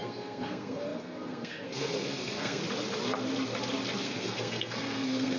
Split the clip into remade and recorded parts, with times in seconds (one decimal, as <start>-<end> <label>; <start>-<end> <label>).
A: 0.0-2.6 remade; 2.6-4.0 recorded; 4.0-5.4 remade